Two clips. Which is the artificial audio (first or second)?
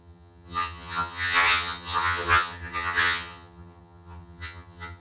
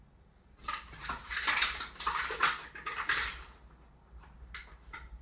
first